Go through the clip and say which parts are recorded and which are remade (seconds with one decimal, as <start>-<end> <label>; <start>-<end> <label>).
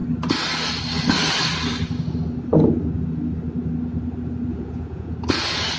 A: 0.0-4.5 recorded; 4.5-5.1 remade; 5.1-5.8 recorded